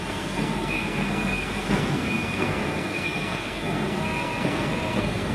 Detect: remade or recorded remade